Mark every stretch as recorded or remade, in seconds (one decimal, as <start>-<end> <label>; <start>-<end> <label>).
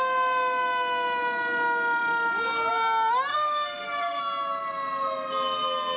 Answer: 0.0-3.3 recorded; 3.3-4.2 remade; 4.2-6.0 recorded